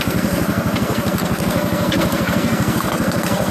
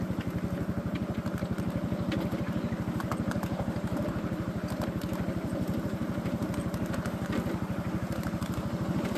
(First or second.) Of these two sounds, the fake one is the first